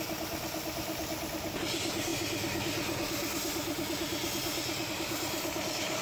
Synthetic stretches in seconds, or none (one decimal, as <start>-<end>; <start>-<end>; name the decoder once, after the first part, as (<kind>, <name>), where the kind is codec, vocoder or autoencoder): none